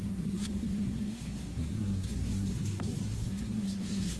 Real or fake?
fake